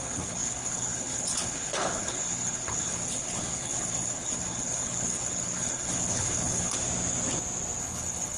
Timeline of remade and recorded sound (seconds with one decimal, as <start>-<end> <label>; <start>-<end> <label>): 0.0-6.7 remade; 6.7-7.8 recorded; 7.8-8.4 remade